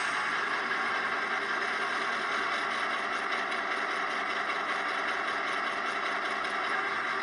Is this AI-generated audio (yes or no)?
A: no